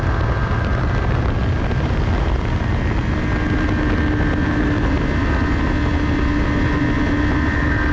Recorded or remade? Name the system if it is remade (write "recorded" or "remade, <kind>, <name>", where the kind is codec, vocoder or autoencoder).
recorded